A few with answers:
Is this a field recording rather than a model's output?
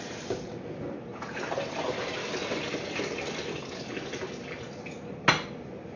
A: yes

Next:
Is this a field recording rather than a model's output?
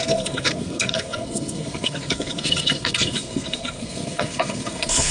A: no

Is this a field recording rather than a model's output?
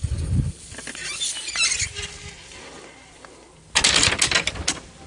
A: yes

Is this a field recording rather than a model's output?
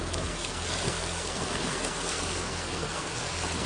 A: no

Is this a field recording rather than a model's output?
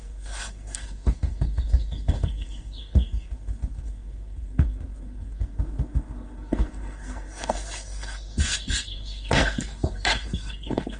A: no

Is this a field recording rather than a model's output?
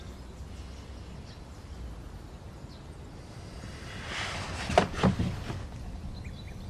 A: yes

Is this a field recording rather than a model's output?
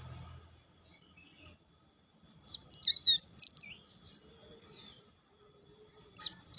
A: yes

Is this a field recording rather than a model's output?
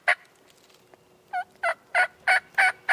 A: yes